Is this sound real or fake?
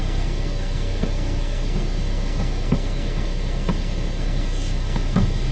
fake